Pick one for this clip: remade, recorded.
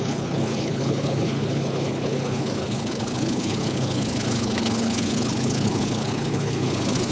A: remade